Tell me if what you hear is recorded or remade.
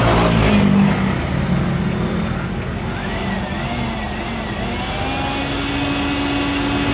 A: recorded